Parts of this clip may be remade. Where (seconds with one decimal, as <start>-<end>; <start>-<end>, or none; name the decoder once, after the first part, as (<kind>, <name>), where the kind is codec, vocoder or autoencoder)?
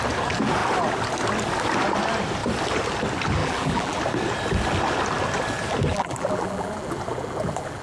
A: 3.4-4.0 (vocoder, BigVGAN v2); 5.9-6.7